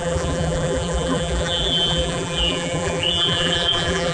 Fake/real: fake